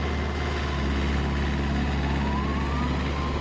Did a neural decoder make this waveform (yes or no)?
no